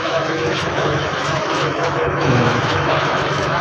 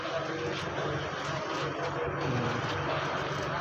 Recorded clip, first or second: second